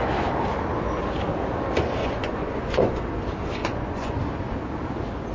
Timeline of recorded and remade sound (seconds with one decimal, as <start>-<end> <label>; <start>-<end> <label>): 0.0-2.0 recorded; 2.0-3.0 remade; 3.0-3.6 recorded; 3.6-4.2 remade; 4.2-5.3 recorded